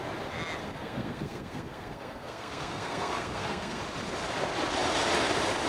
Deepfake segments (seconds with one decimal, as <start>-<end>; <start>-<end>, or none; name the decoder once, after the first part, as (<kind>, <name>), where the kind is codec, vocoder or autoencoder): 0.6-3.8 (codec, SNAC)